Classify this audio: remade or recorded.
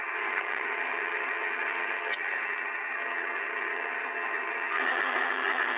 remade